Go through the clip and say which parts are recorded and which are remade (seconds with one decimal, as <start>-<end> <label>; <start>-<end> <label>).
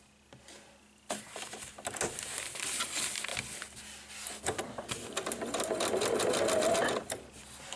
0.0-7.8 recorded